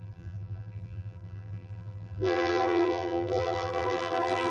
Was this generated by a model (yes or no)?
yes